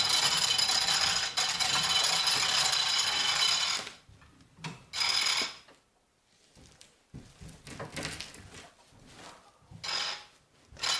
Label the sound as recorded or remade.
recorded